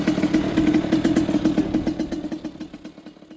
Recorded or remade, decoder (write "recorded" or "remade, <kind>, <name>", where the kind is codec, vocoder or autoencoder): recorded